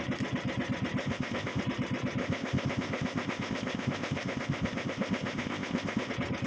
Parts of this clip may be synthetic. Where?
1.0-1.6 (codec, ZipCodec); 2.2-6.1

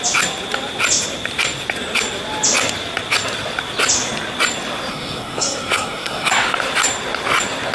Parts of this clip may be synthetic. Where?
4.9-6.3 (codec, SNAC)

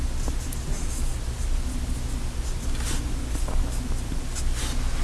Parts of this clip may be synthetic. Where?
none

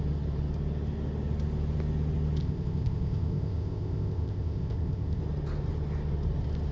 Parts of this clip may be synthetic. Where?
2.4-5.2 (codec, ZipCodec)